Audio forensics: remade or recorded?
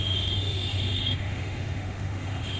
remade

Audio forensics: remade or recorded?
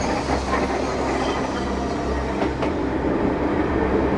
recorded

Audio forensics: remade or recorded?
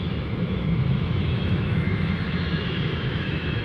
remade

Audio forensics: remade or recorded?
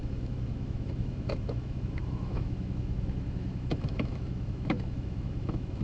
remade